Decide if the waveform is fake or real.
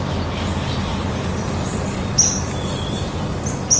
real